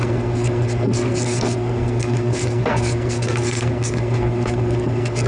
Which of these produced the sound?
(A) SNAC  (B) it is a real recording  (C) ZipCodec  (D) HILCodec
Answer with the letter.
A